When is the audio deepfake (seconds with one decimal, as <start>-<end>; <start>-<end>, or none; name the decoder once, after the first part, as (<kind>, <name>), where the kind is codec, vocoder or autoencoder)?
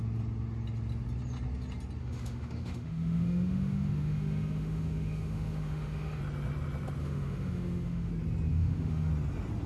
2.0-6.2 (autoencoder, DAC-VAE); 7.0-8.1; 8.5-9.1